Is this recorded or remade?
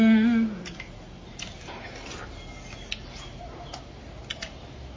recorded